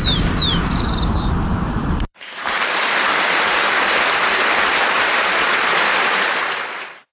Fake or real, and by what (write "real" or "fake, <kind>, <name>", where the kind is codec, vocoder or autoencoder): fake, vocoder, BigVGAN v2